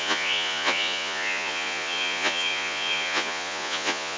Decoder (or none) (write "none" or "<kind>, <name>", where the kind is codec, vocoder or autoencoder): vocoder, Vocos